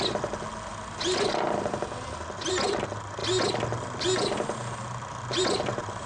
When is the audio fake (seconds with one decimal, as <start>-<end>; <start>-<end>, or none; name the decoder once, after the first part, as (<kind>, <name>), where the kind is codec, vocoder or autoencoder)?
none